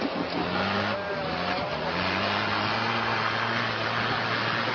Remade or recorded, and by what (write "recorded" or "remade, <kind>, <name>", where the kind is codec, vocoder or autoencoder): recorded